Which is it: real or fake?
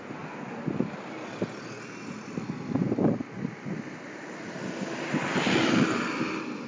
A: real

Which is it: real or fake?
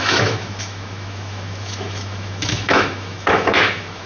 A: fake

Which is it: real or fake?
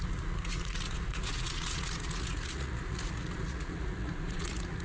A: fake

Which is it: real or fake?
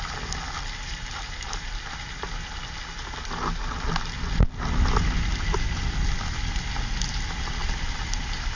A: real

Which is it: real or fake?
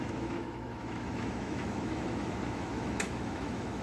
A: fake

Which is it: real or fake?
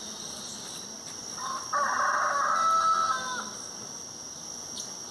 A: real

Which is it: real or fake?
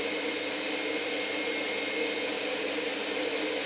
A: real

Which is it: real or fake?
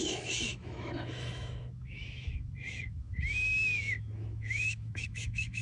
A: fake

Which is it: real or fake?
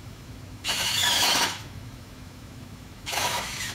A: fake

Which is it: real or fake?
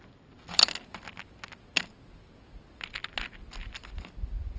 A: real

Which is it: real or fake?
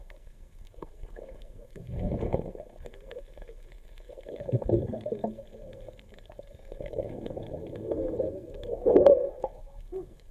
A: fake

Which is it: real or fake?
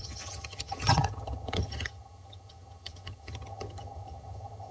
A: fake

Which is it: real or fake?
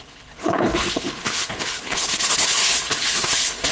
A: fake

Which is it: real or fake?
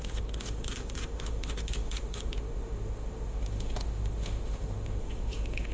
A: fake